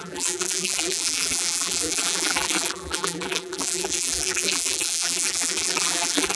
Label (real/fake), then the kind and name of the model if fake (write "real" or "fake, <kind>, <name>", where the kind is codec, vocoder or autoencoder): fake, vocoder, BigVGAN v2